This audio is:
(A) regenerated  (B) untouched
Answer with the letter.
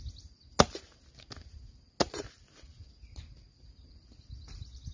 B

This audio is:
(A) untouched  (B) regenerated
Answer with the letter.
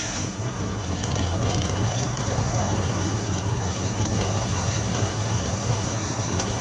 B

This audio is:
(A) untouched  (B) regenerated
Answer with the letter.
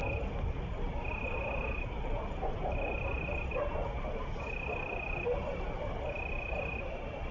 A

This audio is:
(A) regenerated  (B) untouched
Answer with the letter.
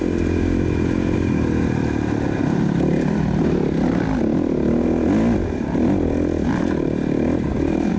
B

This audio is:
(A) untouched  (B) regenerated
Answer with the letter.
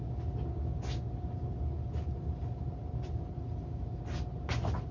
A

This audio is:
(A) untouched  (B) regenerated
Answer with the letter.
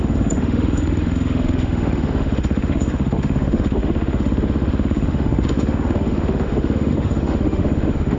B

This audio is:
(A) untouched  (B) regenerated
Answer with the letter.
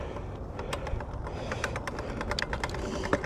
A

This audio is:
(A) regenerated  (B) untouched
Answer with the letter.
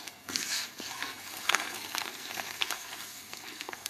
A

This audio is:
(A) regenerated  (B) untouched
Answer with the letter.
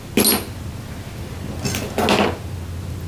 B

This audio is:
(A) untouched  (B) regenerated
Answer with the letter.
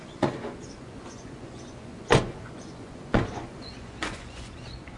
B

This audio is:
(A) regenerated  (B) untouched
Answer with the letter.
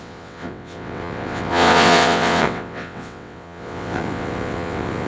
A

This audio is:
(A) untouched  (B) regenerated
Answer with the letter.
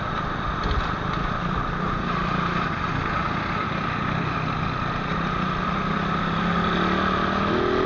A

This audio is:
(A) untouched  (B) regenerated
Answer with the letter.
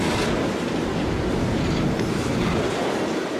A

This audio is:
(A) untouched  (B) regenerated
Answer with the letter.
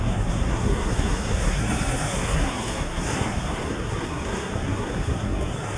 B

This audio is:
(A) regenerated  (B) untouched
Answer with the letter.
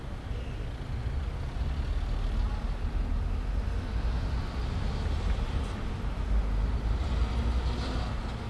B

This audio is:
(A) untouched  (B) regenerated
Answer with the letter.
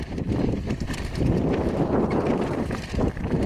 B